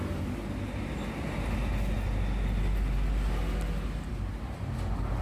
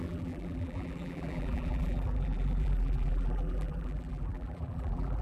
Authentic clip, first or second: first